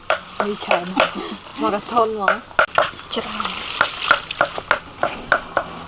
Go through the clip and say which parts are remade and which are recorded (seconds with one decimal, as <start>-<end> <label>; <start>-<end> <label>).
0.0-5.9 recorded